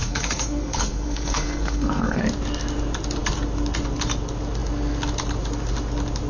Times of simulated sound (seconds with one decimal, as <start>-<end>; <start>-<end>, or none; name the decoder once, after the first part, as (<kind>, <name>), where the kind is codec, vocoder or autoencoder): 0.0-2.2 (codec, SNAC)

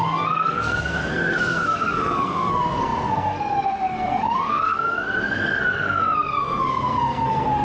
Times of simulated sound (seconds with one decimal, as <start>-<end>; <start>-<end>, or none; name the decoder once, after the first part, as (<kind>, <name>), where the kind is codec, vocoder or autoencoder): 0.0-7.6 (codec, SNAC)

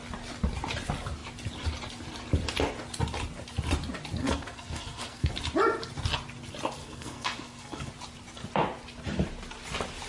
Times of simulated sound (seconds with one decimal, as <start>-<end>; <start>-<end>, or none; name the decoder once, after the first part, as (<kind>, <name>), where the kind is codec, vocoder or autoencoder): 4.2-5.3 (codec, SNAC); 6.8-7.9

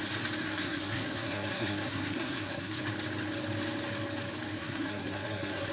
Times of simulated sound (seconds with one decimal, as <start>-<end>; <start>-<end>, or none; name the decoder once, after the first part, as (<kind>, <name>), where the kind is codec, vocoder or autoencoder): 0.4-2.8 (codec, SNAC); 4.6-5.7

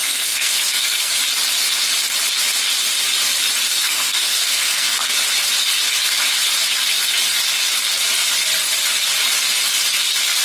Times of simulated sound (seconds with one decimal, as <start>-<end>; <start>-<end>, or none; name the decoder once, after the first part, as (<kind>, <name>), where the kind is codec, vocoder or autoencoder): 0.0-1.2 (codec, SNAC); 3.7-5.1